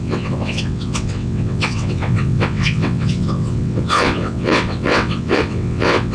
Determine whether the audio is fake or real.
fake